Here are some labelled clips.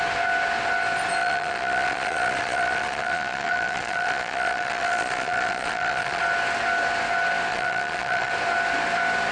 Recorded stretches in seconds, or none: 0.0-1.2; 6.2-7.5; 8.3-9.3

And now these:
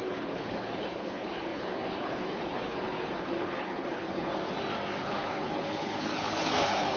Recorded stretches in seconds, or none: 4.3-5.0